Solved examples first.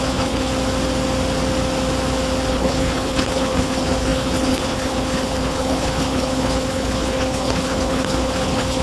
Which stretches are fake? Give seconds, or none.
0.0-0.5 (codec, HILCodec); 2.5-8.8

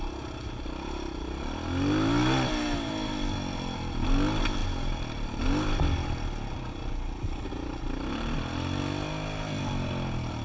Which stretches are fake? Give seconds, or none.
none

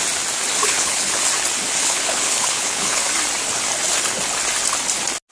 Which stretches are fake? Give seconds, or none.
0.6-1.2 (codec, HILCodec); 1.8-3.0

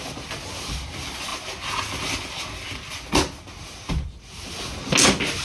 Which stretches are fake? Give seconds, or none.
none

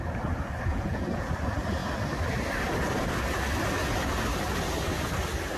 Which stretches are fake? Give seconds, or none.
0.7-1.3 (vocoder, Vocos)

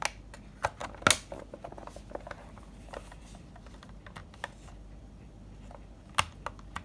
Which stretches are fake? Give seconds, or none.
none

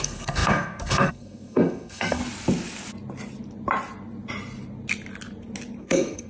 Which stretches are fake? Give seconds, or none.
0.0-2.2 (codec, SNAC); 5.8-6.3

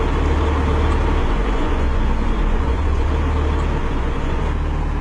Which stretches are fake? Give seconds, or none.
1.2-3.1 (vocoder, Vocos); 3.8-4.4